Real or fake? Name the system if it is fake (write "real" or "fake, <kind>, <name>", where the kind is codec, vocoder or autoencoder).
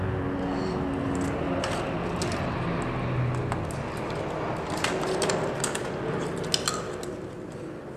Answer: real